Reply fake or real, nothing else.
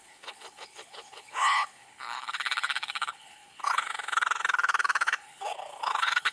fake